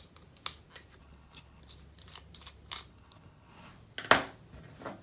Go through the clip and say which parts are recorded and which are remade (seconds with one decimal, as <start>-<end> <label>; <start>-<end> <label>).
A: 0.0-1.0 recorded; 1.0-1.6 remade; 1.6-2.9 recorded; 2.9-3.7 remade; 3.7-5.0 recorded